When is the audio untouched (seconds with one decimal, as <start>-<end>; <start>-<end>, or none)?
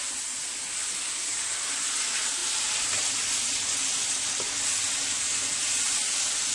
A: 0.0-6.5